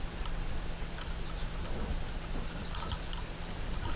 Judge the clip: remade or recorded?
recorded